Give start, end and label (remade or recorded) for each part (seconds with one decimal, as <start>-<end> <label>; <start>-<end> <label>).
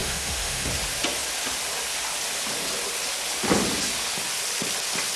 0.0-0.7 remade; 0.7-5.2 recorded